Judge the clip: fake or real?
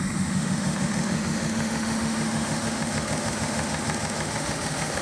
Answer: fake